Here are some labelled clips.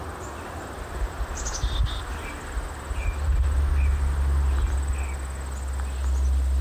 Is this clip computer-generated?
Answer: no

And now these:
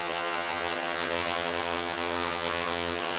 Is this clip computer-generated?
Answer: yes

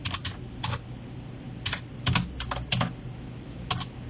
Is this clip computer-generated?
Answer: no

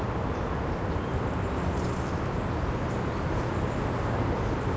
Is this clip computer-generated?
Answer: no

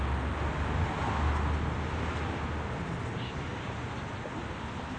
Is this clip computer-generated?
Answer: no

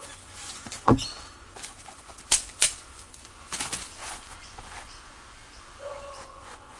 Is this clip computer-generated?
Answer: yes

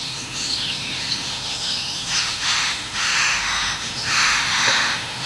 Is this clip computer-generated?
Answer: yes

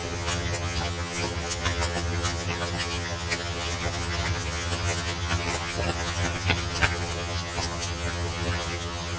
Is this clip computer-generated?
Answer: yes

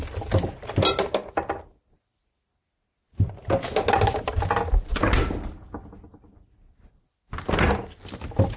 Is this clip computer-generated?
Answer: no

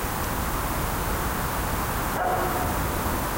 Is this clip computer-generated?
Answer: no